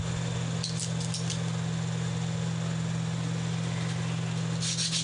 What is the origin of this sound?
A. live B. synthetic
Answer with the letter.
A